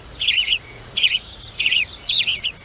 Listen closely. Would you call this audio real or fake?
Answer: fake